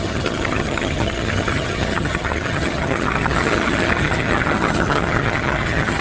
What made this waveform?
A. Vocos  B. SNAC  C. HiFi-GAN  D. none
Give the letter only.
C